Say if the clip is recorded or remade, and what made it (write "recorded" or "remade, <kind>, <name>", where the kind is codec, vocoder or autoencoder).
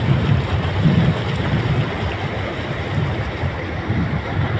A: remade, vocoder, BigVGAN v2